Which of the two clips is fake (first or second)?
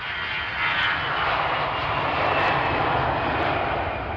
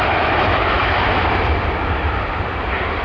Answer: second